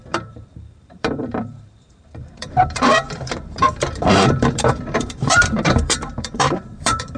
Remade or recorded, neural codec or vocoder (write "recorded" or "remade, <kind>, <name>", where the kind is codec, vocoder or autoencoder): remade, vocoder, BigVGAN v2